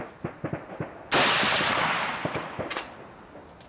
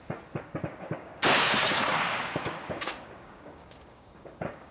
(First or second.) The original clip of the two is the first